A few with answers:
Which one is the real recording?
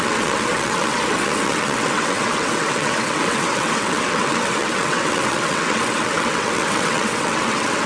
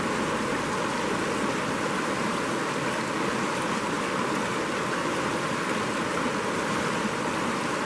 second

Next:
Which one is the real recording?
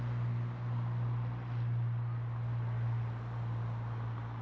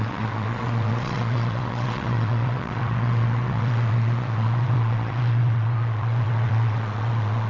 first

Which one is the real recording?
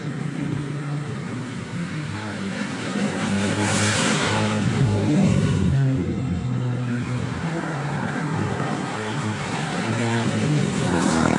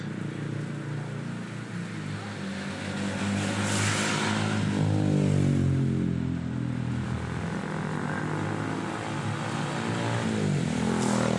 second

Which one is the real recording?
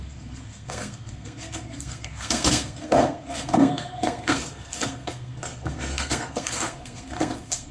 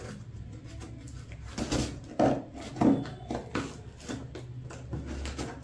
second